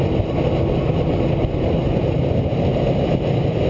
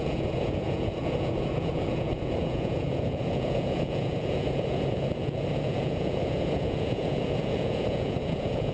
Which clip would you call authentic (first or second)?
first